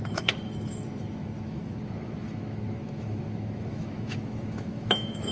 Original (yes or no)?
no